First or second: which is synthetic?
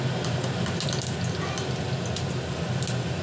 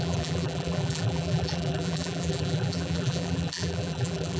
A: second